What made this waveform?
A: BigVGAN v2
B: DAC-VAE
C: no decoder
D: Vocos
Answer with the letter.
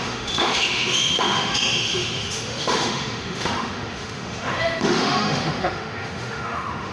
B